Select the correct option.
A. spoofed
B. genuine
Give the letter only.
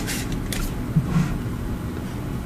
B